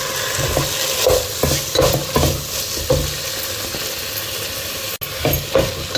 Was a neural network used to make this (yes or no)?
no